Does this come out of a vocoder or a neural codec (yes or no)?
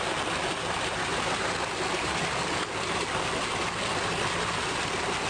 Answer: no